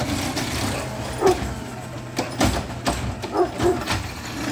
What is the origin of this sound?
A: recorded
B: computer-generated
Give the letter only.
A